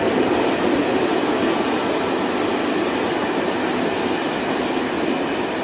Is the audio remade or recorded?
recorded